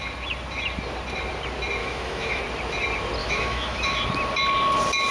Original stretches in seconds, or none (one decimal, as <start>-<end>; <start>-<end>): 0.0-1.8; 2.4-3.2; 4.0-5.1